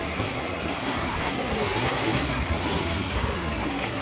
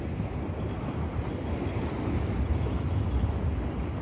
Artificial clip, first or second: first